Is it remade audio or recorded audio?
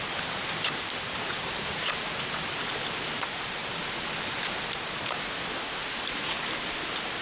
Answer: remade